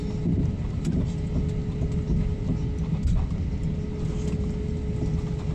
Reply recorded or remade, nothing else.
recorded